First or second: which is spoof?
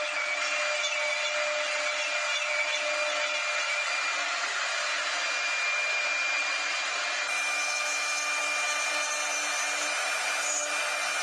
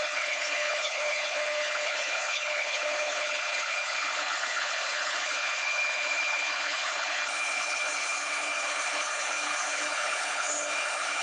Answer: second